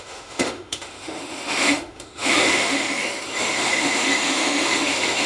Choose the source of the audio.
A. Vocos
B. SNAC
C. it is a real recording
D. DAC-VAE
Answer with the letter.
D